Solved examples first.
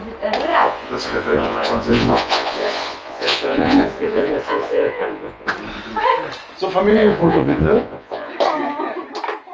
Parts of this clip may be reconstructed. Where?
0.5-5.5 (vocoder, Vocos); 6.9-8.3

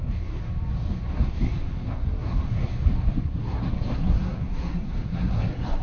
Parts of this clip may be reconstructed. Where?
0.0-0.4 (codec, SNAC); 1.1-2.7; 3.2-5.8

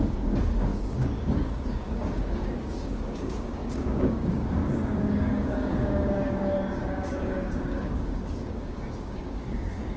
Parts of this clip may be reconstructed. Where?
0.0-10.0 (codec, DAC)

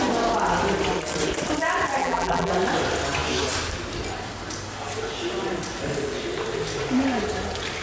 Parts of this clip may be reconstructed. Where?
2.0-2.5 (vocoder, BigVGAN v2)

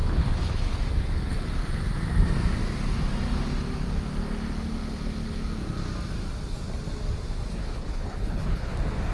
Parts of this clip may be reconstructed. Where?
0.0-0.8 (codec, HILCodec); 7.5-8.7

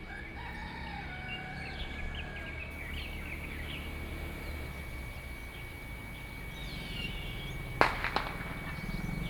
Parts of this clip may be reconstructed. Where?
none

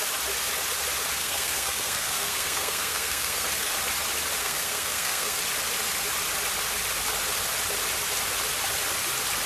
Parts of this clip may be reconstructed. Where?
1.2-3.7 (codec, SNAC); 4.4-5.4